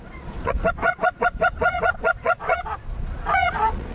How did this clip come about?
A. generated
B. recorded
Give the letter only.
A